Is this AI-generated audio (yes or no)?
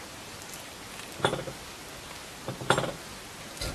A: no